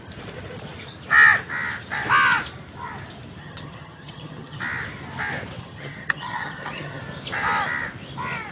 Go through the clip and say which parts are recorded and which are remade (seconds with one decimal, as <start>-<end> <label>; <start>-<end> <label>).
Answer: 0.0-3.4 recorded; 3.4-4.6 remade; 4.6-5.6 recorded; 5.6-7.0 remade; 7.0-8.5 recorded